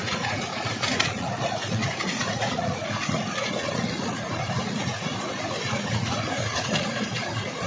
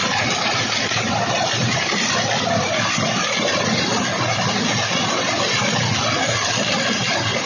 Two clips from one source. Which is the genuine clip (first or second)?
second